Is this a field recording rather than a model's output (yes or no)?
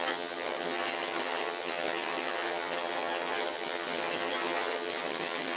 no